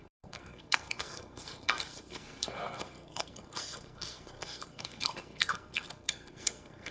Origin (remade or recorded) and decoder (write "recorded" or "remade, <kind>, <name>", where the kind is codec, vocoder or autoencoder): remade, codec, SNAC